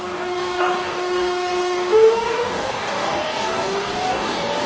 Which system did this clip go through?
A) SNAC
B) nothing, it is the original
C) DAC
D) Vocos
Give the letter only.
C